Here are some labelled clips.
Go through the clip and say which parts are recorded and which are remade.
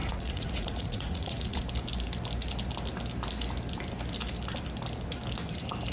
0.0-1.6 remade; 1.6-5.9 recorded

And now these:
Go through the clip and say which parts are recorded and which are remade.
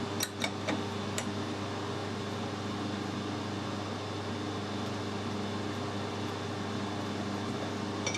0.0-8.2 recorded